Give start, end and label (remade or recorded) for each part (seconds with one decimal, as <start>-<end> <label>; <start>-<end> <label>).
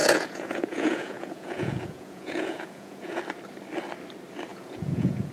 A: 0.0-3.2 remade; 3.2-4.5 recorded; 4.5-5.3 remade